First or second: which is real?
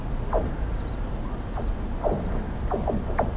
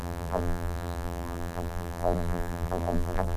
first